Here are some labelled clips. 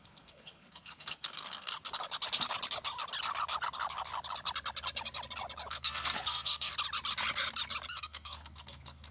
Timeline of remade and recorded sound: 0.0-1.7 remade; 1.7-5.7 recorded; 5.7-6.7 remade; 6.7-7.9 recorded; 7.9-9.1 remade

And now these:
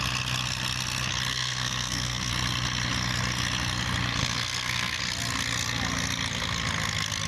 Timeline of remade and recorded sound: 0.0-1.3 recorded; 1.3-2.3 remade; 2.3-4.2 recorded; 4.2-5.0 remade; 5.0-7.3 recorded

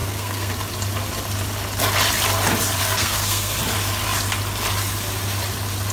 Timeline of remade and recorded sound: 0.0-0.5 remade; 0.5-2.8 recorded; 2.8-3.6 remade; 3.6-5.9 recorded